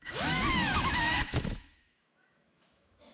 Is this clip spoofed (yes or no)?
yes